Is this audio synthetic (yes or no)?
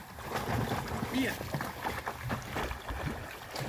no